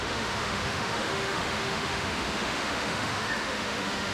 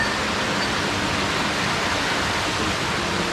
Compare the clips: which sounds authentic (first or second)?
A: second